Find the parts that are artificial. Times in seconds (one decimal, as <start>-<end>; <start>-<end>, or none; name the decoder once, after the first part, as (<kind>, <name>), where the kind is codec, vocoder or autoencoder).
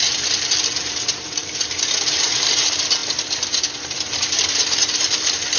0.0-5.6 (vocoder, BigVGAN v2)